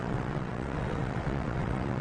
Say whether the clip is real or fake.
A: fake